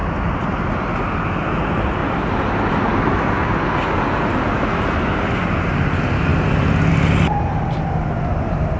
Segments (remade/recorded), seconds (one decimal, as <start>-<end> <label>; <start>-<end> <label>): 0.0-2.0 recorded; 2.0-2.9 remade; 2.9-8.8 recorded